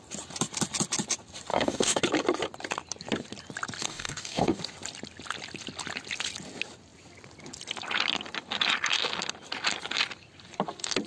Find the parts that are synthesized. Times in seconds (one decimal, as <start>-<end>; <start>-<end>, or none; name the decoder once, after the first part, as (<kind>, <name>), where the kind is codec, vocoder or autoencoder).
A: 1.5-2.0 (codec, DAC); 3.8-4.6